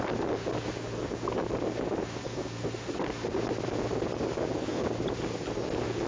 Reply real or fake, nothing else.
real